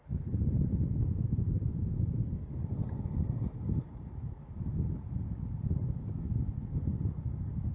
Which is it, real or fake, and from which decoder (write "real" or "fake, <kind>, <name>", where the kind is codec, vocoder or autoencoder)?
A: real